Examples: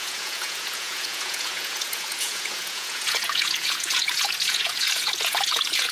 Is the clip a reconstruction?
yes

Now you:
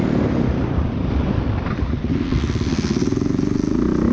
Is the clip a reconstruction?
no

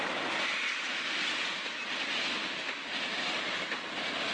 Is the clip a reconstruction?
no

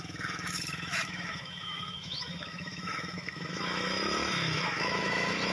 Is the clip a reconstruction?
yes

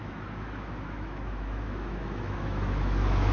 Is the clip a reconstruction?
yes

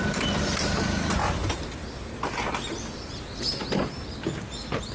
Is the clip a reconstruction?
no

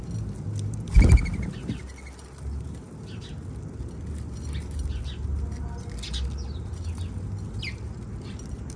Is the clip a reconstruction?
no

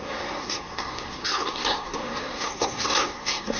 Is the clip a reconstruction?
yes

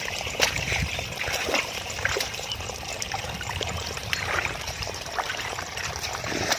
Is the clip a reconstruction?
yes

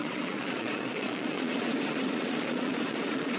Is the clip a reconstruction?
yes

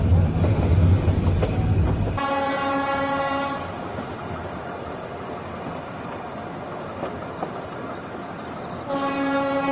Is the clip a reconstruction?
no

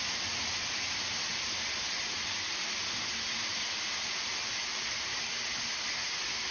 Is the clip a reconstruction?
no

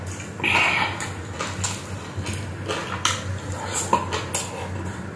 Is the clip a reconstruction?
no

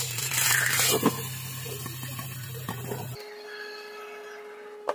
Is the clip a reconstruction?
no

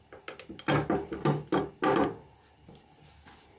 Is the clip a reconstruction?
no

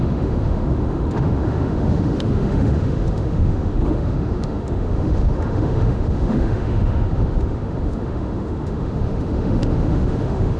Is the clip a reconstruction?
yes